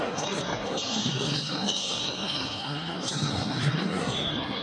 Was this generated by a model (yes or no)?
yes